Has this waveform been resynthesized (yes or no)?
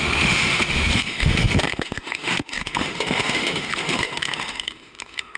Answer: yes